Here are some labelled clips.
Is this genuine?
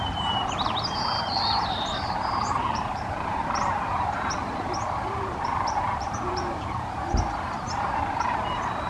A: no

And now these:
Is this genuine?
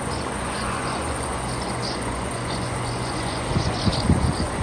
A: no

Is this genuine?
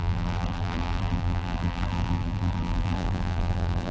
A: no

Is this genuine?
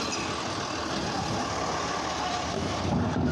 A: yes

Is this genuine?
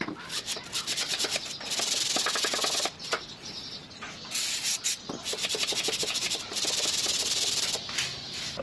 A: yes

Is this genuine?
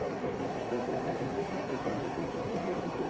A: no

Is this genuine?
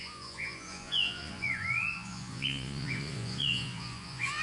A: no